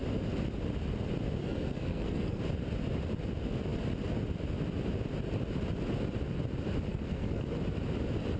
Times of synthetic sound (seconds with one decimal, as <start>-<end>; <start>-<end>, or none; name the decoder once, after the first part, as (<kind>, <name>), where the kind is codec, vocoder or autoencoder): 1.4-2.4 (codec, SNAC); 6.9-7.6